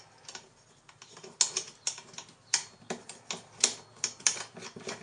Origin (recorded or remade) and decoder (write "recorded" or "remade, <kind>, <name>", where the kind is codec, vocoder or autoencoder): recorded